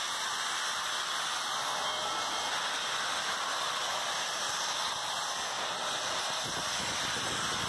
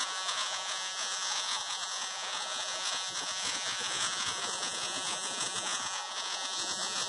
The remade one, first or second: second